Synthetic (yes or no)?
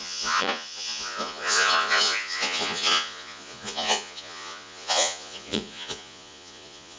yes